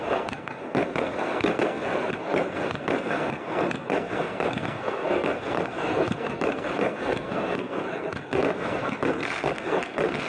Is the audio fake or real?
fake